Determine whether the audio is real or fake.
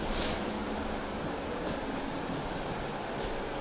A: real